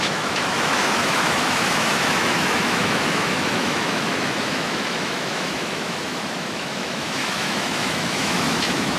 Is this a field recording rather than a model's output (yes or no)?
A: no